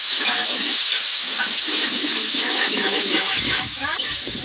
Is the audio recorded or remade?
remade